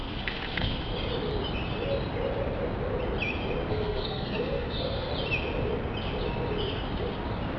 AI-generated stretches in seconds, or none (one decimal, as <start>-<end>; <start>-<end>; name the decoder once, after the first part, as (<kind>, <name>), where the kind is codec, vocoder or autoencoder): 0.0-0.9 (codec, SNAC); 3.7-5.1